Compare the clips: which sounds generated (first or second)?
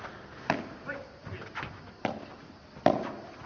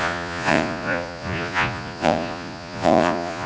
second